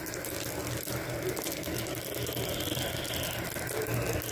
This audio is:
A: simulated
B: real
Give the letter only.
B